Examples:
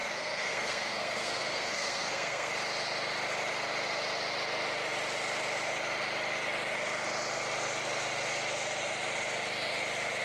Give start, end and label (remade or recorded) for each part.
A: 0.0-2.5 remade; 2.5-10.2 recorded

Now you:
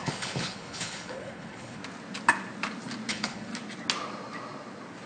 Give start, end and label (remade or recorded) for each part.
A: 0.0-1.8 remade; 1.8-3.1 recorded; 3.1-3.5 remade; 3.5-5.1 recorded

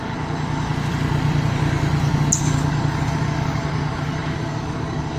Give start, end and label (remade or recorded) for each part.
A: 0.0-0.7 remade; 0.7-2.4 recorded; 2.4-5.2 remade